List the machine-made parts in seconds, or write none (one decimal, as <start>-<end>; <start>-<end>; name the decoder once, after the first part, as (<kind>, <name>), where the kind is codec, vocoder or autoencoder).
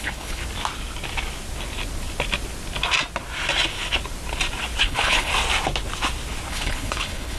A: 0.0-0.4 (codec, HILCodec); 4.8-5.3; 6.5-7.4